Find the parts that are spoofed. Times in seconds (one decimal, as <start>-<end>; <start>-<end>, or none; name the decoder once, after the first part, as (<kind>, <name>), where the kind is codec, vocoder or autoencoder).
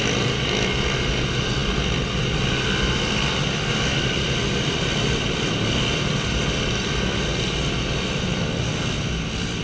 none